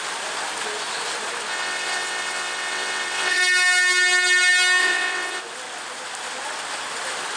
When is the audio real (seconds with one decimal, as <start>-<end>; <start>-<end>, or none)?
0.0-1.5; 3.4-4.8; 5.4-7.4